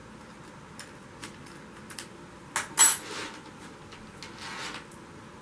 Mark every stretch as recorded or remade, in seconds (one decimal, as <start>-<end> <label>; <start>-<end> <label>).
0.0-5.4 recorded

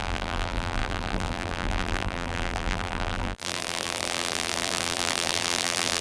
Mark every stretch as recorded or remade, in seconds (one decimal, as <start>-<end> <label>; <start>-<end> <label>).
0.0-6.0 remade

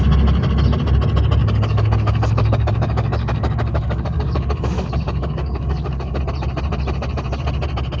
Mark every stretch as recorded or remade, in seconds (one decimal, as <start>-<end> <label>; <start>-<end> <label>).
0.0-1.4 recorded; 1.4-6.2 remade; 6.2-8.0 recorded

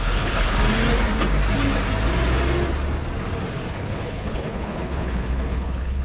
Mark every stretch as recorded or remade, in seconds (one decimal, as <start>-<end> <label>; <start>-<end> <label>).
0.0-0.6 remade; 0.6-3.7 recorded; 3.7-6.0 remade

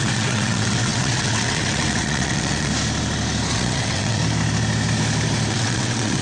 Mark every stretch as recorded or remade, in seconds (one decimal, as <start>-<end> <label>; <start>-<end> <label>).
0.0-2.7 remade; 2.7-3.5 recorded; 3.5-4.2 remade; 4.2-5.5 recorded; 5.5-6.2 remade

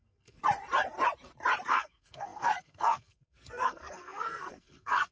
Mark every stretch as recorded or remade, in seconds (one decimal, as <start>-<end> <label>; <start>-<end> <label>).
0.0-0.4 remade; 0.4-1.7 recorded; 1.7-5.1 remade